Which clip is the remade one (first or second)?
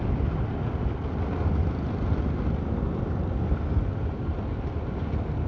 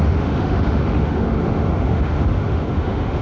second